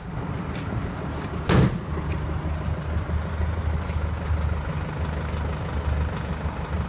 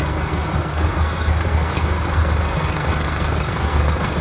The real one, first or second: first